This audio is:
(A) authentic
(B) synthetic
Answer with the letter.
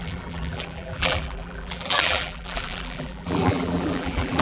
B